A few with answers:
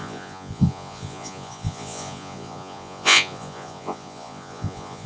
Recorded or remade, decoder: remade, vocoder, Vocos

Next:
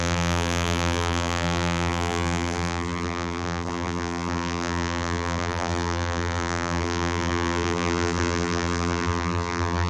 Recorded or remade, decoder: remade, vocoder, BigVGAN v2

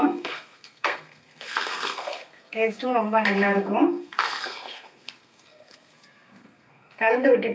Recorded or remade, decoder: remade, codec, SNAC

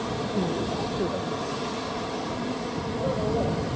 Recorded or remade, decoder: recorded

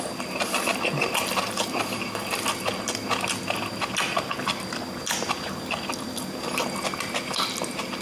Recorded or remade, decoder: recorded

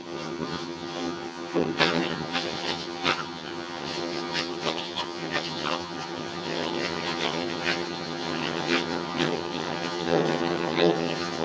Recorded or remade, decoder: remade, vocoder, HiFi-GAN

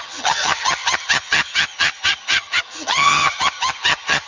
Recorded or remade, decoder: remade, vocoder, HiFi-GAN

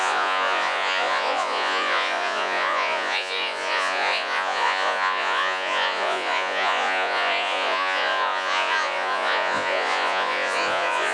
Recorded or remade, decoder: remade, vocoder, Vocos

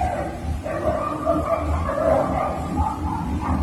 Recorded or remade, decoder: remade, vocoder, BigVGAN v2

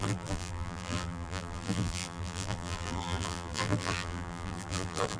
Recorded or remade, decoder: remade, vocoder, BigVGAN v2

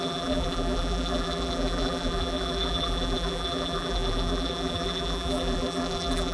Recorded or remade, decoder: remade, vocoder, BigVGAN v2